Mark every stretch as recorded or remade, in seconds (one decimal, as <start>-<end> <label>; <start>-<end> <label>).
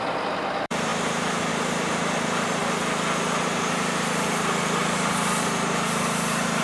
0.0-2.6 remade; 2.6-3.4 recorded; 3.4-6.6 remade